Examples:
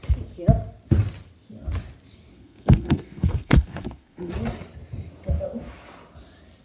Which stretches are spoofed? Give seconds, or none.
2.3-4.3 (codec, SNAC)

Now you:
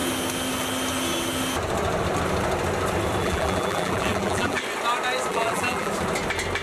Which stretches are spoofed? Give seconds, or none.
3.2-4.6 (vocoder, BigVGAN v2); 5.3-5.9

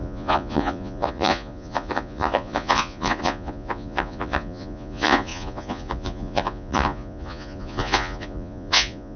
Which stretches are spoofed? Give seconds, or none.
0.0-9.2 (vocoder, Vocos)

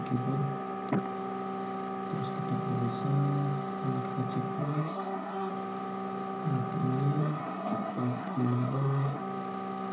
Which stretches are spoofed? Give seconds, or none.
4.6-5.5 (codec, SNAC); 7.2-9.2

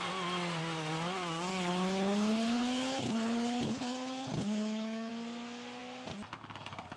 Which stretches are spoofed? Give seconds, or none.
1.5-5.1 (codec, HILCodec)

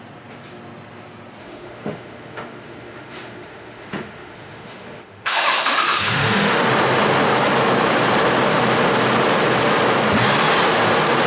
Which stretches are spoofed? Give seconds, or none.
1.4-6.6 (autoencoder, DAC-VAE)

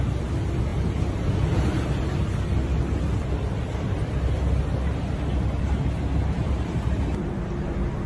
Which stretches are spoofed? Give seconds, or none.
6.4-7.3 (vocoder, BigVGAN v2)